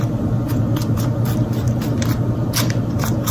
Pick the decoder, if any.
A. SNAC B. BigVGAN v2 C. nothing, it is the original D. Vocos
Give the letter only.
C